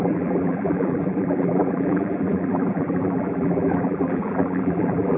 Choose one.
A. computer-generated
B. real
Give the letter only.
A